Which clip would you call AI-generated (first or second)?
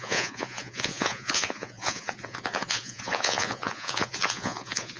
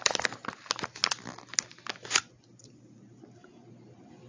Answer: first